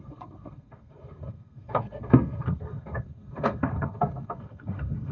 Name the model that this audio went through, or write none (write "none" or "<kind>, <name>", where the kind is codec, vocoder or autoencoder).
codec, SNAC